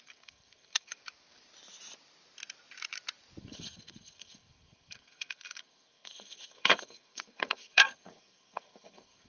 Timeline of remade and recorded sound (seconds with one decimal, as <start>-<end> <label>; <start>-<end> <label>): 0.0-0.9 remade; 0.9-3.4 recorded; 3.4-9.3 remade